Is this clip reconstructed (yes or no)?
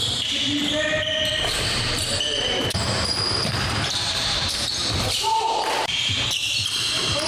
yes